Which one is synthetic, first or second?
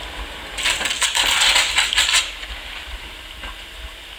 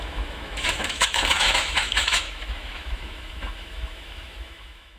second